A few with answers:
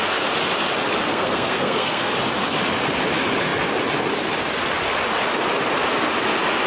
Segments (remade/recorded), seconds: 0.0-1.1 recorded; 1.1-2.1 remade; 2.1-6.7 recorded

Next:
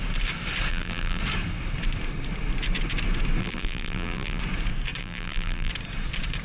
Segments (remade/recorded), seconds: 0.0-0.7 recorded; 0.7-1.2 remade; 1.2-3.4 recorded; 3.4-4.4 remade; 4.4-5.0 recorded; 5.0-5.7 remade; 5.7-6.4 recorded

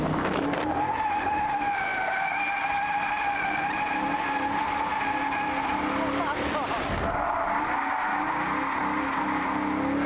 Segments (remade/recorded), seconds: 0.0-10.1 recorded

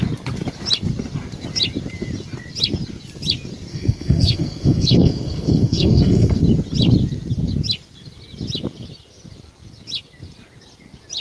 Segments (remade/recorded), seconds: 0.0-3.7 recorded; 3.7-6.4 remade; 6.4-11.2 recorded